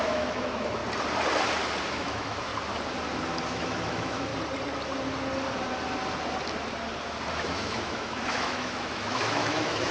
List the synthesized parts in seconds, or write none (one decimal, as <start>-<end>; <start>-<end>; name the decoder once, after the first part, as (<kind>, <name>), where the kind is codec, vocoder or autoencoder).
0.0-0.8 (autoencoder, DAC-VAE); 1.9-2.5; 3.5-4.3; 7.3-9.9